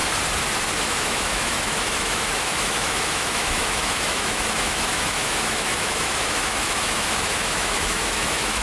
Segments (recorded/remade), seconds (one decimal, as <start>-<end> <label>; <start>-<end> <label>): 0.0-0.8 recorded; 0.8-8.6 remade